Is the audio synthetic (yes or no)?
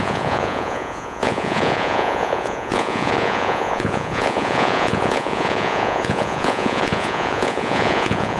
yes